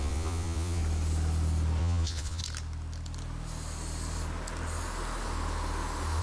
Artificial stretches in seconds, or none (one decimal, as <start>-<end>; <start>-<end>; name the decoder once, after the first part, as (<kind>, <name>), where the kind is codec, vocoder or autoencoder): 0.0-0.8 (vocoder, Vocos); 1.8-2.4